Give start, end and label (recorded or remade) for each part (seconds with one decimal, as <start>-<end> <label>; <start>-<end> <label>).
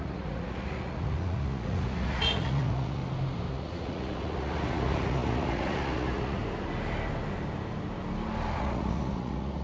0.0-3.0 remade; 3.0-3.5 recorded; 3.5-6.4 remade; 6.4-8.6 recorded; 8.6-9.6 remade